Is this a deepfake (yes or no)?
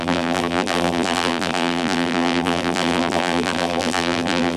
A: yes